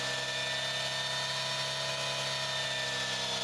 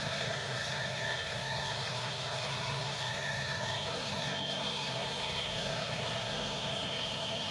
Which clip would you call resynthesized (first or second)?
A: second